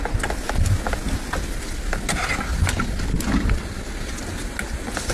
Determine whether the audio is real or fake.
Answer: real